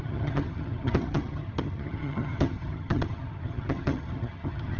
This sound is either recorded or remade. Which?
remade